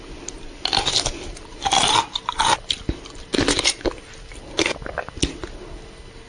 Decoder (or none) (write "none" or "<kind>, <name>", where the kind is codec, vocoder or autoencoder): none